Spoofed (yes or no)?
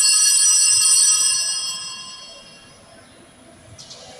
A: no